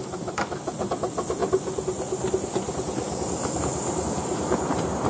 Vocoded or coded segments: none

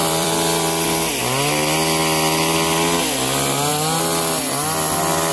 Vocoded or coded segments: 0.0-1.1 (vocoder, BigVGAN v2)

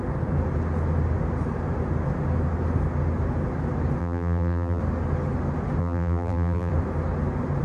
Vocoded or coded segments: 4.0-4.8 (vocoder, BigVGAN v2); 5.8-6.7